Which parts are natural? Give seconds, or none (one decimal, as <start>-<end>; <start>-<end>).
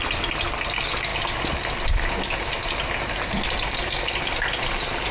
0.0-5.1